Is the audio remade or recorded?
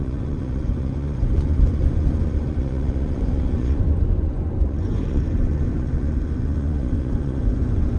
remade